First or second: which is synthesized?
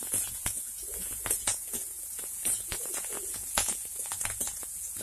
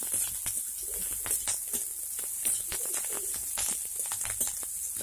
first